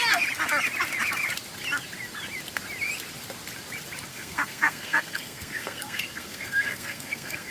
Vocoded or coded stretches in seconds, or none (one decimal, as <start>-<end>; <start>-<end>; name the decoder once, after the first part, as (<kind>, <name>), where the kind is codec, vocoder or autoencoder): 4.1-7.5 (codec, SNAC)